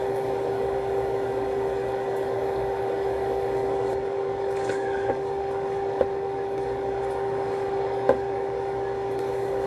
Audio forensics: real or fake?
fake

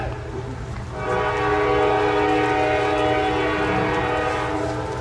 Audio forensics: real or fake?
real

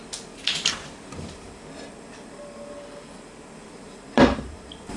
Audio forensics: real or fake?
fake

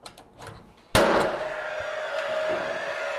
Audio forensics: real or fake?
real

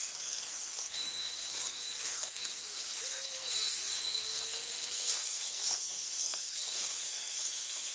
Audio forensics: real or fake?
fake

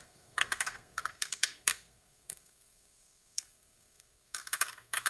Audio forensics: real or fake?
fake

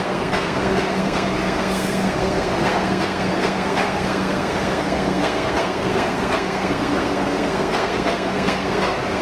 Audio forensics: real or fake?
fake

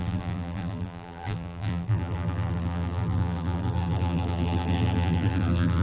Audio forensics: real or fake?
fake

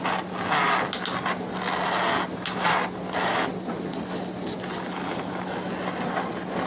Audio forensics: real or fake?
real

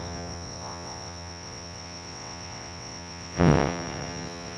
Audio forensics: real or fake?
fake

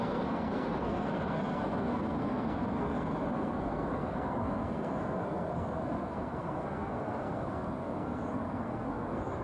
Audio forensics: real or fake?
fake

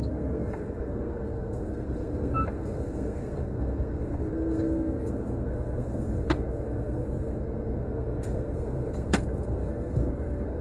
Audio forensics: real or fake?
fake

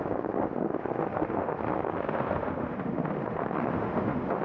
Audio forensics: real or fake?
fake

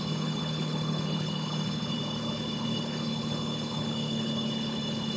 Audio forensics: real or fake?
fake